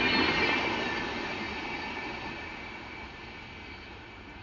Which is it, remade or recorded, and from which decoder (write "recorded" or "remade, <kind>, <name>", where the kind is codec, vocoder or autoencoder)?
recorded